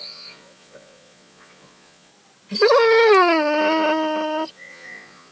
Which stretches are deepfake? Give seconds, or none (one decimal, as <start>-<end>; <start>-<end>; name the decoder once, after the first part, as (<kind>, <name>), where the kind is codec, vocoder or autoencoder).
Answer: 0.0-2.1 (vocoder, Vocos); 4.5-5.3